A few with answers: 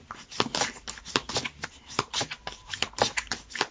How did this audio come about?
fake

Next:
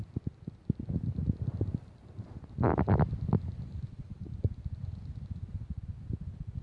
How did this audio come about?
real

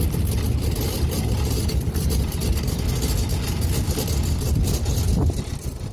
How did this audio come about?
real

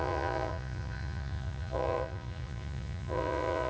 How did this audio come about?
fake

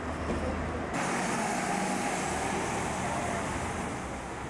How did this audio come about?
real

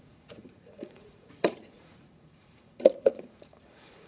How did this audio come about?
fake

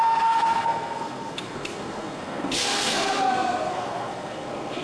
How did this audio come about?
fake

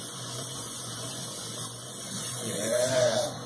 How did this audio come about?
fake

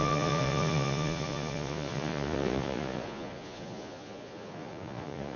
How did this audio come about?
fake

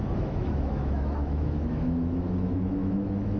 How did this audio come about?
fake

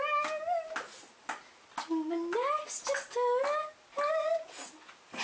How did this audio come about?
real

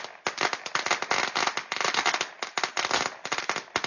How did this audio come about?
real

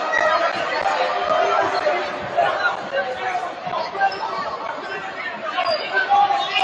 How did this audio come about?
fake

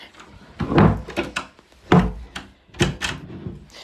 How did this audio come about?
real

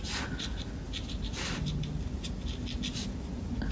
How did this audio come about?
real